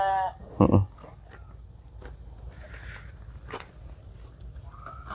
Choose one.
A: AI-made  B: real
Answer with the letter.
B